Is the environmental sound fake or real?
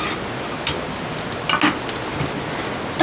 real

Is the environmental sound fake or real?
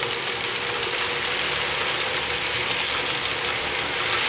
real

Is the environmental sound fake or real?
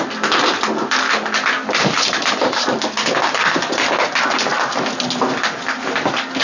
real